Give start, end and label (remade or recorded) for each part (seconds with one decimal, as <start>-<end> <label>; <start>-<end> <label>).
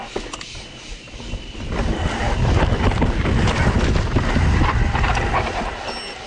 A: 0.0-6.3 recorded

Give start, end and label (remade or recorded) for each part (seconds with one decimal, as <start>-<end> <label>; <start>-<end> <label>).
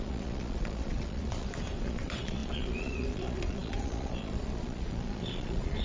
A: 0.0-5.8 remade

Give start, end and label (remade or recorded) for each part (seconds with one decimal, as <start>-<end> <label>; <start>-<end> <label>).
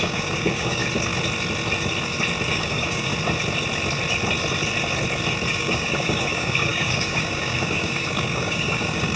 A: 0.0-0.8 remade; 0.8-2.5 recorded; 2.5-3.1 remade; 3.1-5.5 recorded; 5.5-9.2 remade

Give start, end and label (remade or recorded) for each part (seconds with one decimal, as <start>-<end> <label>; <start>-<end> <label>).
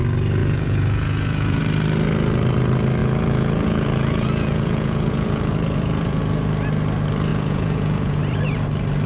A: 0.0-0.4 recorded; 0.4-1.6 remade; 1.6-3.0 recorded; 3.0-6.2 remade; 6.2-7.3 recorded; 7.3-8.2 remade; 8.2-9.1 recorded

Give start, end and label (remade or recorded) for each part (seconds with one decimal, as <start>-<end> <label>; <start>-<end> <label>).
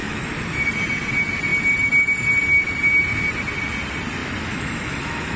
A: 0.0-0.6 remade; 0.6-4.2 recorded; 4.2-5.4 remade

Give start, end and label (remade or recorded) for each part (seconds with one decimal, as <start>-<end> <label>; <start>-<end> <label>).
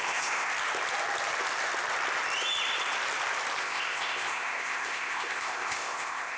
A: 0.0-0.5 remade; 0.5-3.6 recorded; 3.6-6.4 remade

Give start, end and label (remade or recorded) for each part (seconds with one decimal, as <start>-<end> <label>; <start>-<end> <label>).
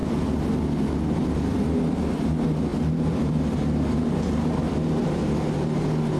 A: 0.0-2.7 recorded; 2.7-4.6 remade; 4.6-6.2 recorded